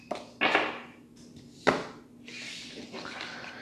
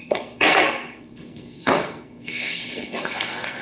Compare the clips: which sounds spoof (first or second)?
second